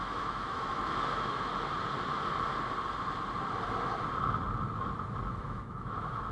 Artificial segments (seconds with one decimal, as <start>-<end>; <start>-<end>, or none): 0.0-1.5; 5.3-6.3